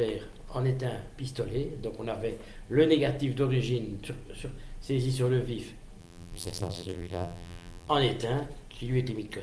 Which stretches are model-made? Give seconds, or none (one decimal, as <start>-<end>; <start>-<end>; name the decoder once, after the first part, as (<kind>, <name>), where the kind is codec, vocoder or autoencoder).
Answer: 6.0-7.9 (vocoder, BigVGAN v2)